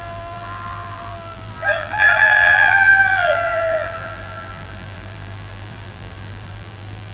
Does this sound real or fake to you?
fake